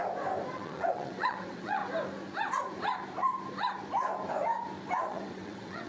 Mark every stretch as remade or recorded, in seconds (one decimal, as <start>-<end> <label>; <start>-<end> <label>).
0.0-0.5 recorded; 0.5-1.8 remade; 1.8-5.0 recorded; 5.0-5.9 remade